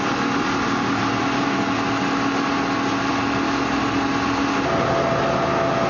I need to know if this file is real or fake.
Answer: real